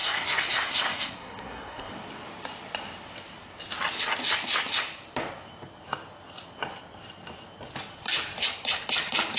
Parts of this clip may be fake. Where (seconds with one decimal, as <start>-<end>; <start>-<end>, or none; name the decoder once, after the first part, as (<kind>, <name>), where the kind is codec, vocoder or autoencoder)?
0.0-1.9 (codec, SNAC)